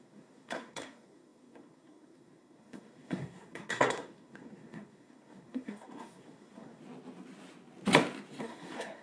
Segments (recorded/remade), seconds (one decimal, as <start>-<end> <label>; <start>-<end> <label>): 0.0-6.8 remade; 6.8-8.4 recorded; 8.4-9.0 remade